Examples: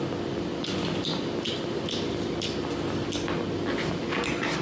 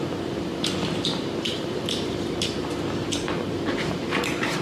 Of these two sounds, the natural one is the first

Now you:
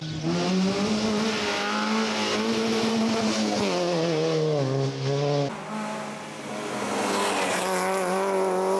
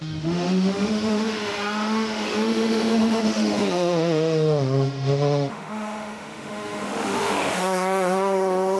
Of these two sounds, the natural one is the first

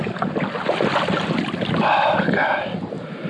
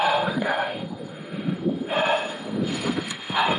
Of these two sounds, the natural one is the first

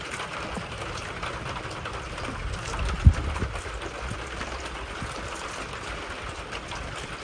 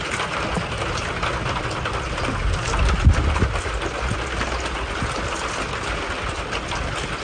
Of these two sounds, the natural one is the second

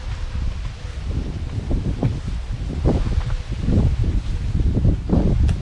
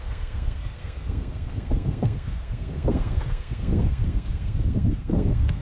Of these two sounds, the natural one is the first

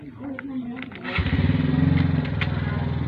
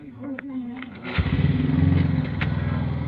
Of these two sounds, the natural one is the first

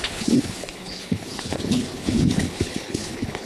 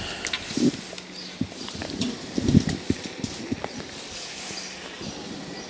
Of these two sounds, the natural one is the second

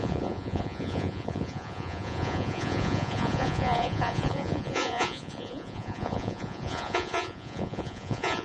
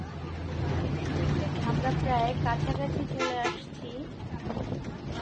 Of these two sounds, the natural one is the second